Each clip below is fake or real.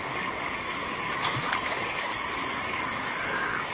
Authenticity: fake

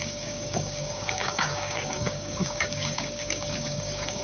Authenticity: fake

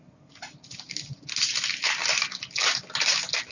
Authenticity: real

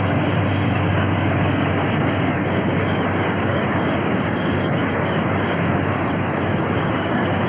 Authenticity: fake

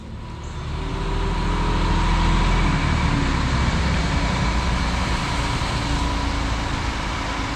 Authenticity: real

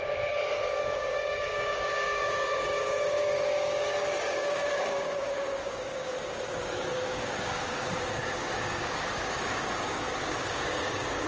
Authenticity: fake